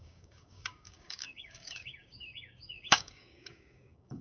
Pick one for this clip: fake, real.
fake